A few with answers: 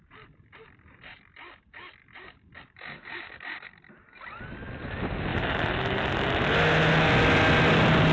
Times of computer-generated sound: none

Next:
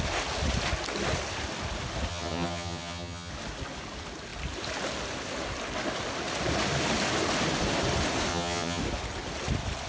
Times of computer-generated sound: 2.1-3.3; 8.3-8.8

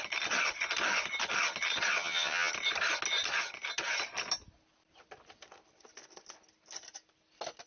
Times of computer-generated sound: 2.0-2.5

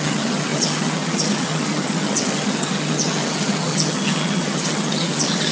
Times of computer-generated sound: 0.0-5.5

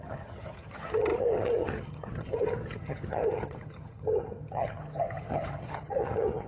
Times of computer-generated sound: 0.0-6.5

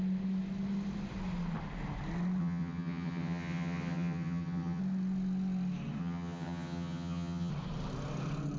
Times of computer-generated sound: 2.4-4.8; 6.0-7.5

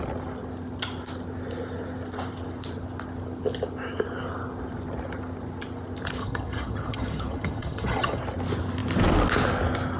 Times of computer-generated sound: 6.2-8.2

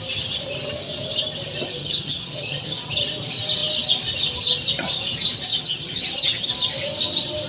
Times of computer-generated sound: 1.8-2.9; 5.5-6.5